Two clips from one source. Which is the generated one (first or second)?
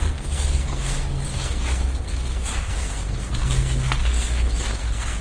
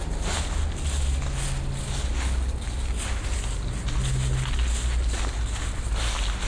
first